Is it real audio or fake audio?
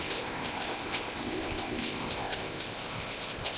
fake